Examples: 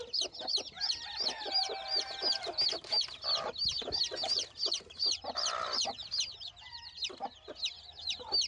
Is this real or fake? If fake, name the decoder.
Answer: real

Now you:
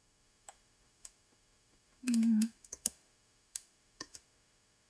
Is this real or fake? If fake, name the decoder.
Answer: fake, autoencoder, DAC-VAE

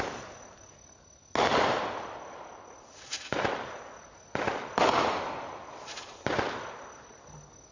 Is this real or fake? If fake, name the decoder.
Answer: real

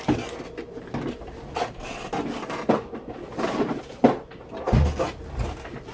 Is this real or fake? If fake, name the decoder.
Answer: real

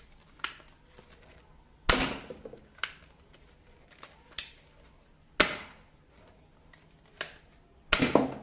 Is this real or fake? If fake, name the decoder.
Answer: real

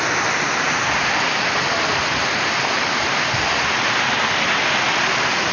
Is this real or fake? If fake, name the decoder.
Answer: real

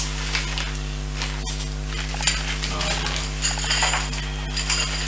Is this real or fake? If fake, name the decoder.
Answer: real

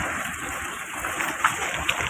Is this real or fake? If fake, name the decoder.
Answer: real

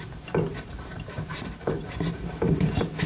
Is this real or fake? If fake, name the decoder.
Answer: fake, vocoder, BigVGAN v2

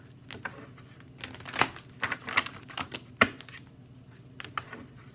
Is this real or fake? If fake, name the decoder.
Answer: real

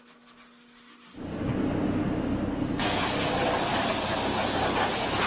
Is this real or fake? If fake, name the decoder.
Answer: real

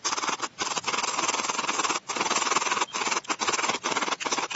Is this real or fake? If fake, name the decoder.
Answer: real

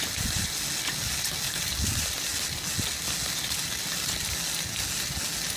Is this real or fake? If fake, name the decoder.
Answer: real